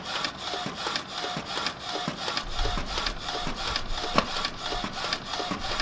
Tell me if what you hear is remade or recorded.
recorded